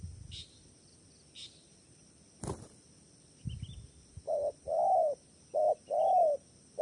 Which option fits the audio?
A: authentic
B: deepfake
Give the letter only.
A